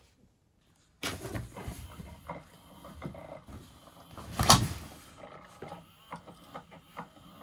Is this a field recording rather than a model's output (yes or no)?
yes